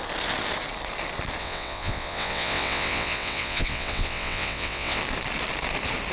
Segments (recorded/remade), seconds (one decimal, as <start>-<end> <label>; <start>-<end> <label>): 0.0-1.4 recorded; 1.4-5.0 remade; 5.0-6.1 recorded